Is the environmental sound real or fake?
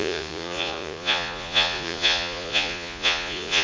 fake